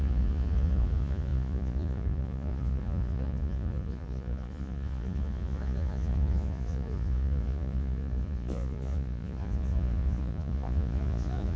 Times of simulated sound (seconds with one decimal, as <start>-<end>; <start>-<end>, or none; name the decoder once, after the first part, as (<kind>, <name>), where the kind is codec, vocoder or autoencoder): 0.0-11.6 (vocoder, Vocos)